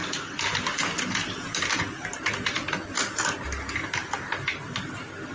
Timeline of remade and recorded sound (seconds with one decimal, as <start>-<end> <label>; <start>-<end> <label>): 0.0-5.3 recorded

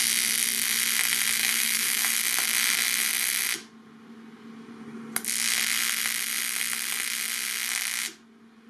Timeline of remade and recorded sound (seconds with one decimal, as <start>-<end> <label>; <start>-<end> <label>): 0.0-1.4 recorded; 1.4-2.1 remade; 2.1-8.7 recorded

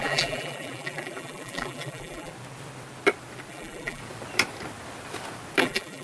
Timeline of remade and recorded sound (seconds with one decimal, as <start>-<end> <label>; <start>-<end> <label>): 0.0-2.3 remade; 2.3-3.5 recorded; 3.5-4.0 remade; 4.0-5.6 recorded; 5.6-6.0 remade

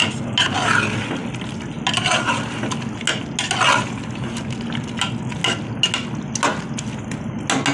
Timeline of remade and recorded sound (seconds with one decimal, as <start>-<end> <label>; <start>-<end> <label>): 0.0-7.7 recorded

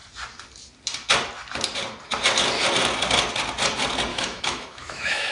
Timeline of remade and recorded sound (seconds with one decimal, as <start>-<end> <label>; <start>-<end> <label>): 0.0-4.1 recorded; 4.1-5.3 remade

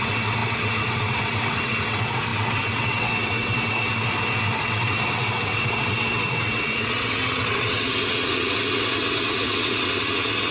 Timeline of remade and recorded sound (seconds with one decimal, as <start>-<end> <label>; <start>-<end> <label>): 0.0-3.9 remade; 3.9-4.6 recorded; 4.6-10.5 remade